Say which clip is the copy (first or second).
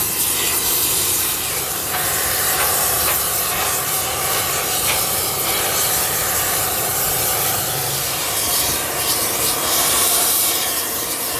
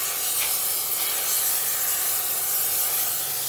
first